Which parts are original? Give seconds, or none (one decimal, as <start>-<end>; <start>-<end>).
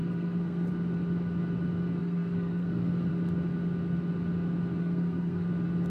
0.7-2.0; 3.1-4.8; 5.5-5.9